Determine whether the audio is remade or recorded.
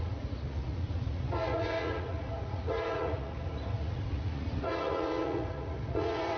remade